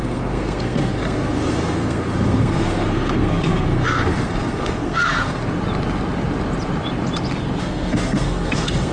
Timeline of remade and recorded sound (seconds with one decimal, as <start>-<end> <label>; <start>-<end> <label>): 0.0-5.4 remade; 5.4-7.6 recorded; 7.6-8.9 remade